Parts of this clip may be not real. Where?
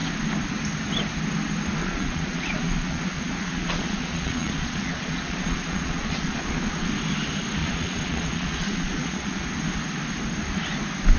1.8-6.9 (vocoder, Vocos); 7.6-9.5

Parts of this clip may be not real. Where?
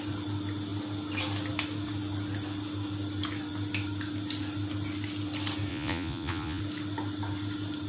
5.7-6.6 (vocoder, Vocos)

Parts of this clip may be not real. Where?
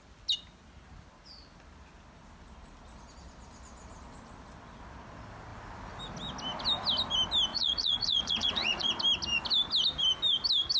7.5-8.9 (vocoder, Vocos)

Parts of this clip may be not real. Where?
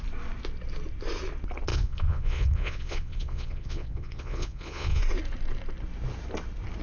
1.7-5.0 (vocoder, Vocos)